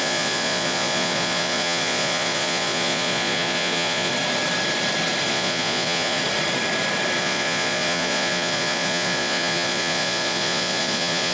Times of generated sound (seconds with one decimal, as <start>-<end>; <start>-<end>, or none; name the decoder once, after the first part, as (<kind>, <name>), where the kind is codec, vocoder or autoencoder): 0.0-4.1 (vocoder, Vocos); 5.3-6.2; 7.2-11.3